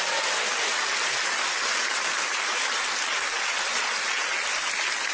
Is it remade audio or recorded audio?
recorded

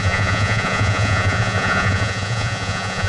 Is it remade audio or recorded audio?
remade